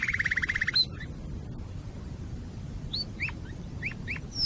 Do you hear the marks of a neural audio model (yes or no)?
no